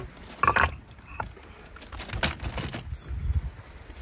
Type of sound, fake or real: real